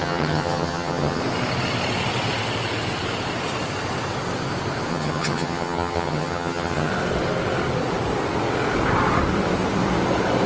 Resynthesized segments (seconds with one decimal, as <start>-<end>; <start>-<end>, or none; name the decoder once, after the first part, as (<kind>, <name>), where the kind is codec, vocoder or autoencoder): 0.0-1.2 (vocoder, HiFi-GAN); 4.9-6.9

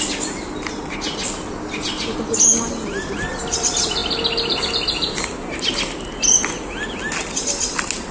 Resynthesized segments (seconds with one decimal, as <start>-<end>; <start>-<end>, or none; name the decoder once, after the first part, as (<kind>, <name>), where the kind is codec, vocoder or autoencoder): none